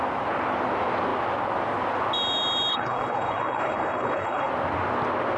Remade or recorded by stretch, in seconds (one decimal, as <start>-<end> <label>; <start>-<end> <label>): 0.0-2.7 recorded; 2.7-4.5 remade; 4.5-5.4 recorded